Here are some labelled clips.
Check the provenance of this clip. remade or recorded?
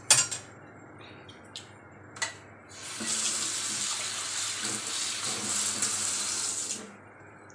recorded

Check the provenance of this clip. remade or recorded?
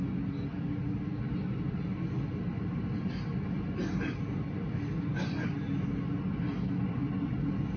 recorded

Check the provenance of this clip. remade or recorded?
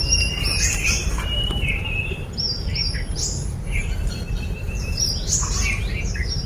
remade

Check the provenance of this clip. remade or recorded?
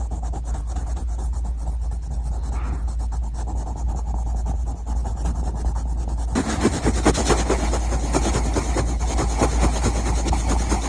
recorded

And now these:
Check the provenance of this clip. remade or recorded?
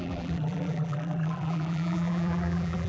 remade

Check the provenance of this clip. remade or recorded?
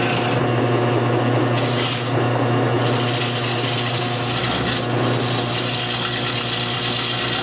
recorded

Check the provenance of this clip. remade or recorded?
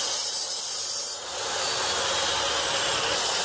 recorded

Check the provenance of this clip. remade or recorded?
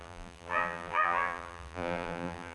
remade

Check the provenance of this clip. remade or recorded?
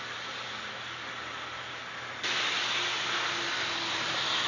recorded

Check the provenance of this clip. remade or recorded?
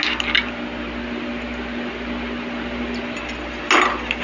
recorded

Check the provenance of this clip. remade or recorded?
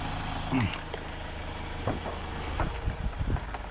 recorded